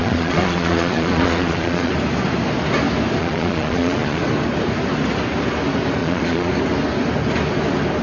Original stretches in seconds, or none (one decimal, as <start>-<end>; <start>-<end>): 1.9-3.2; 4.2-6.0; 6.5-8.0